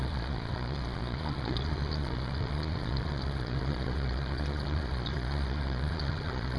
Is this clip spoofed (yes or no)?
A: yes